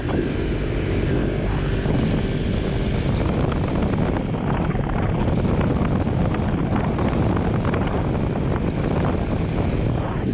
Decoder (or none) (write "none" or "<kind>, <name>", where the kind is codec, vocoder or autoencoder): none